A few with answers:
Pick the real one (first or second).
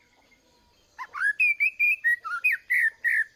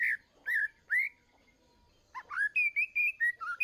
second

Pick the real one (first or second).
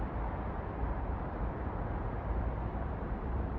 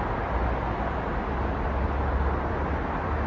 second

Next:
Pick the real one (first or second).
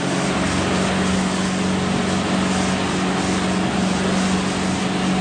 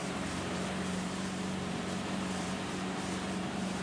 first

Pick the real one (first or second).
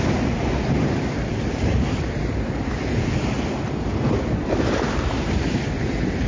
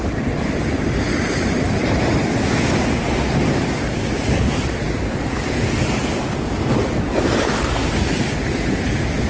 second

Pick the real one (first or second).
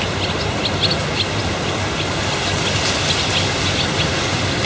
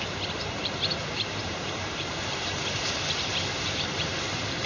first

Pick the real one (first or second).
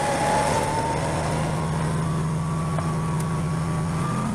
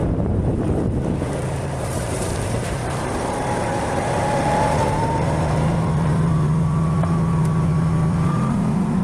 first